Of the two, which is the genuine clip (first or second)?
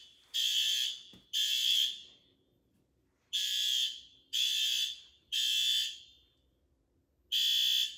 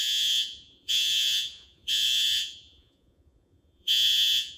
first